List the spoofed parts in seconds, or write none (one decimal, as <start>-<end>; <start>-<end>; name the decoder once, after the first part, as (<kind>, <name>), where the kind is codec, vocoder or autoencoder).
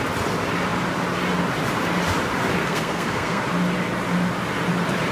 2.6-3.4 (codec, SNAC)